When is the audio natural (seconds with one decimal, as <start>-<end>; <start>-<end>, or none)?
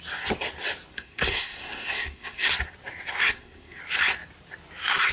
0.0-0.9; 2.5-3.2; 3.8-5.1